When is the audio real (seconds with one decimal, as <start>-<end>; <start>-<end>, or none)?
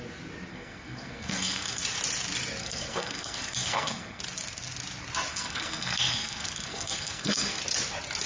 0.0-0.5; 1.8-2.6; 4.2-5.3; 7.6-8.3